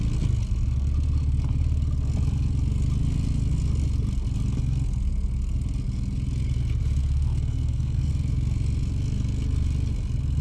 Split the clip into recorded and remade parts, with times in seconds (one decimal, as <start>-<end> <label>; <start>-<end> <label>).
0.0-7.0 recorded; 7.0-8.1 remade; 8.1-10.4 recorded